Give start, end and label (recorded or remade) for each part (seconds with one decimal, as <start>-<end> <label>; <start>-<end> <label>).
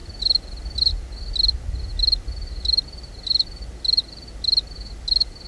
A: 0.0-5.5 recorded